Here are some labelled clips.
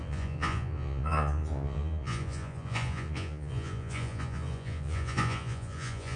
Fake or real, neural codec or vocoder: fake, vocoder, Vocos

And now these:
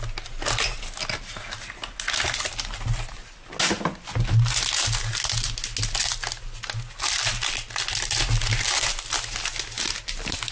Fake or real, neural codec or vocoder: real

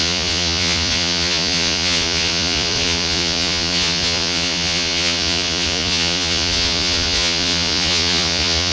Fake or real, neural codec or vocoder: fake, vocoder, Vocos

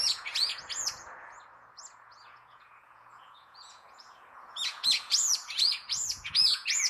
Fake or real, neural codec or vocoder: fake, vocoder, Vocos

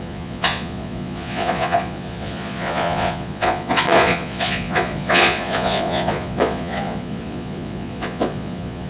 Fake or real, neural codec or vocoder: fake, vocoder, Vocos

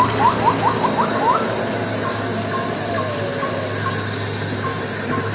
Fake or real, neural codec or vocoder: real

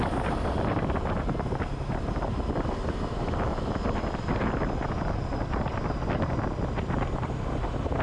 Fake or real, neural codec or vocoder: real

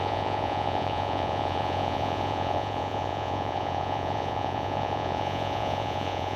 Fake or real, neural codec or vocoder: fake, vocoder, Vocos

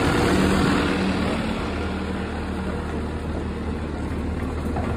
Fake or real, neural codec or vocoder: real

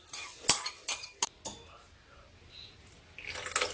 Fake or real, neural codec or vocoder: real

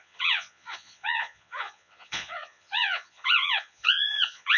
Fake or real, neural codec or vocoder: fake, vocoder, Vocos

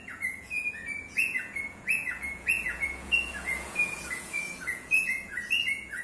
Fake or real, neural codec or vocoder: fake, vocoder, Vocos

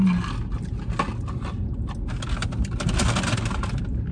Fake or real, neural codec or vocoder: real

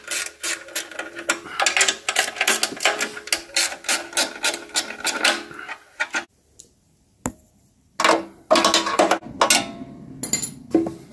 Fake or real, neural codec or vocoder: real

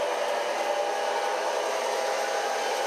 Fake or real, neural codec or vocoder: real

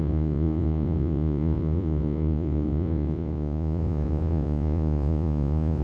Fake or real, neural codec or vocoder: fake, vocoder, Vocos